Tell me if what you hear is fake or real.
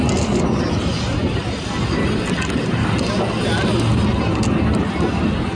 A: real